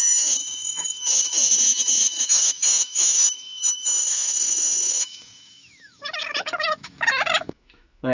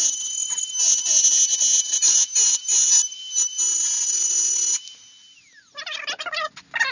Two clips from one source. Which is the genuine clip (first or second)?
second